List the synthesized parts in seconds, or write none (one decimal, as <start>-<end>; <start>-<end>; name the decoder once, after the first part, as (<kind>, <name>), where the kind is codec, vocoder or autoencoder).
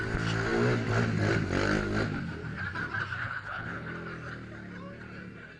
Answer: 3.2-3.9 (codec, HILCodec)